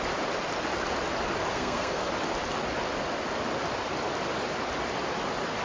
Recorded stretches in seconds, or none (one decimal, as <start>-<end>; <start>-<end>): 0.0-1.5; 2.1-5.6